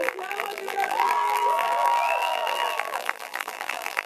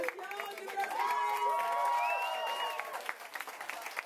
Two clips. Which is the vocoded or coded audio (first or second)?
first